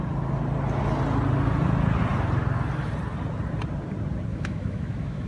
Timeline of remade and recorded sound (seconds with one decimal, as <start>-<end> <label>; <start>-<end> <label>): 0.0-4.3 recorded; 4.3-5.3 remade